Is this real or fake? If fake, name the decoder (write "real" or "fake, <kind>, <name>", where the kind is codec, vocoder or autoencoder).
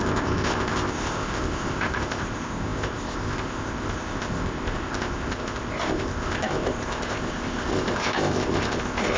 fake, codec, ZipCodec